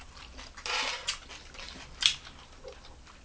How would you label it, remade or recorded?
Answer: recorded